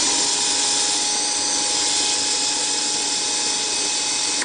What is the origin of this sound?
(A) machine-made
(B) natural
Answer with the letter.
B